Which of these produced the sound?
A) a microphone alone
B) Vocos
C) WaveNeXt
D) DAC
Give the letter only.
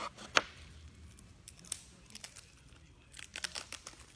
A